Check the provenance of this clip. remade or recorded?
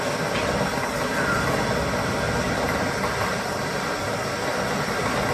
recorded